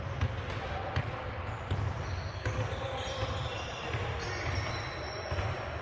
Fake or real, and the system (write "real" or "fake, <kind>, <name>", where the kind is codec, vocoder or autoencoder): real